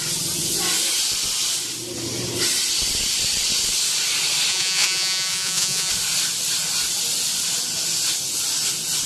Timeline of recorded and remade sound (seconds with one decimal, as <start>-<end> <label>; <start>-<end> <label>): 0.0-4.5 recorded; 4.5-5.9 remade; 5.9-9.1 recorded